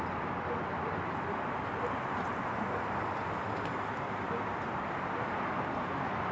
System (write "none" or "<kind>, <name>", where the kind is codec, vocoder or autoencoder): none